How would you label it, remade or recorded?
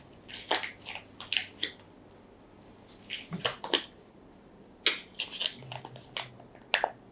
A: recorded